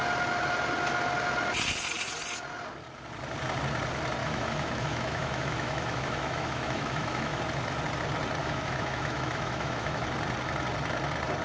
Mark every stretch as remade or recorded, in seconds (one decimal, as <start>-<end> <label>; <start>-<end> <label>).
0.0-4.2 recorded; 4.2-7.4 remade; 7.4-8.4 recorded; 8.4-10.0 remade; 10.0-11.4 recorded

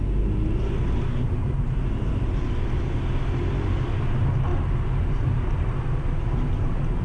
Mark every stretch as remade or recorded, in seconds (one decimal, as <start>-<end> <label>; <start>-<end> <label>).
0.0-4.5 recorded; 4.5-6.5 remade; 6.5-7.0 recorded

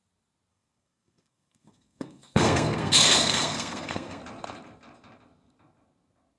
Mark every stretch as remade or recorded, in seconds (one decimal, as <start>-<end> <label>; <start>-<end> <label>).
0.0-0.5 recorded; 0.5-4.2 remade; 4.2-6.4 recorded

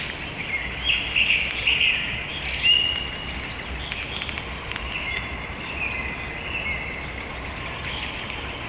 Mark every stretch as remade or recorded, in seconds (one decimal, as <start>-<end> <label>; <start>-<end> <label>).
0.0-8.7 recorded

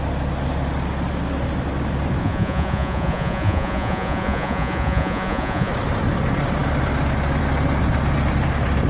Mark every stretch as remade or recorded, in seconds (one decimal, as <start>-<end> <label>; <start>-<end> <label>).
0.0-2.2 recorded; 2.2-5.7 remade; 5.7-8.9 recorded